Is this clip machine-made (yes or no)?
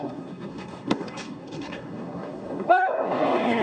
yes